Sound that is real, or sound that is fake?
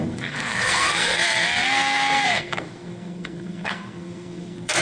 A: fake